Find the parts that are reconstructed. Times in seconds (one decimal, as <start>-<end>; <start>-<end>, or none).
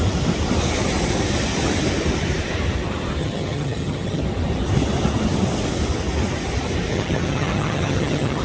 3.2-4.2; 6.9-8.4